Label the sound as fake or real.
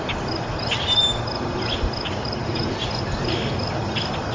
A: real